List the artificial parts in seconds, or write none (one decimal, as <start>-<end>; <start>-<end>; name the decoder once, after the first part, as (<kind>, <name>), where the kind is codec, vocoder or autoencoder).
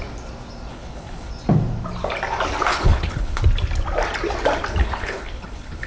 0.7-1.3 (codec, HILCodec); 2.7-3.4; 4.8-5.9